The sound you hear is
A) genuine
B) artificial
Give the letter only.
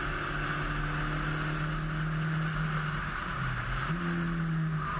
A